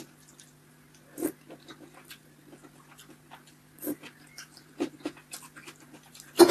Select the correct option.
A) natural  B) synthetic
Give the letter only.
A